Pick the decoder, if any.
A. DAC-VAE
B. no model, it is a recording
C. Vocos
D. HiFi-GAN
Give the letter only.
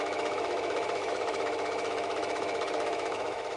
A